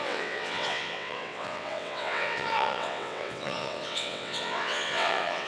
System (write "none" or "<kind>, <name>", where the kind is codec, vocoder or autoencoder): vocoder, WaveNeXt